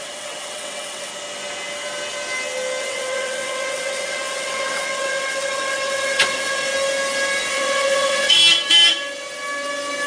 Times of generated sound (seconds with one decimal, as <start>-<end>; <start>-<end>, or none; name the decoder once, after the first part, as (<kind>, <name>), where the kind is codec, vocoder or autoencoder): 0.0-1.1 (vocoder, WaveNeXt); 2.8-6.7; 7.5-8.4